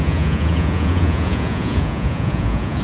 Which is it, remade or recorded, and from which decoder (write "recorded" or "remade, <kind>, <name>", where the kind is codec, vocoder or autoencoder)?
remade, vocoder, Vocos